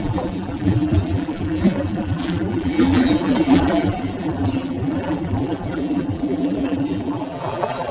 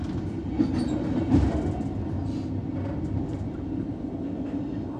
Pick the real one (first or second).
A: second